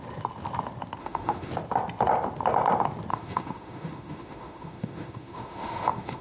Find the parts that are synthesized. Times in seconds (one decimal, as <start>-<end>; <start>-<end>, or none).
1.0-1.5; 3.1-6.2